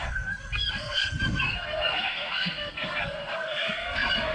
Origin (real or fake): fake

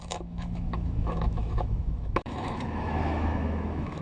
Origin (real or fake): fake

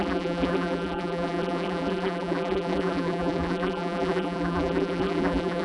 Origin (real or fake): fake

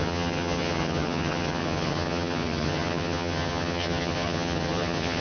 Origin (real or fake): fake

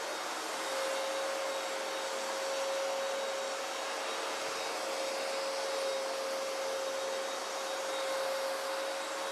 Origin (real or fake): real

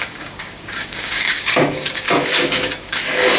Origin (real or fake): fake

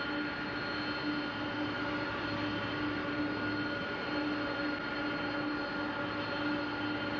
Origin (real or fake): real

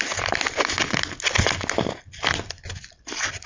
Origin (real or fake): real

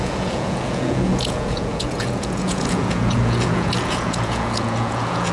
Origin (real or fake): fake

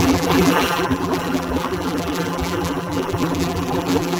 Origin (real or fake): fake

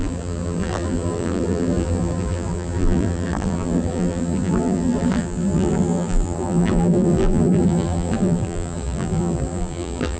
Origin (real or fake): fake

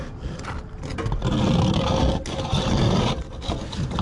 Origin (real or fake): real